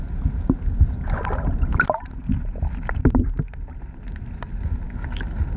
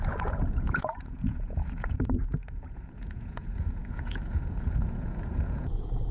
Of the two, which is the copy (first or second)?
second